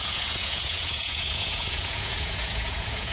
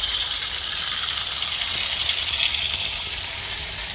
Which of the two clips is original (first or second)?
second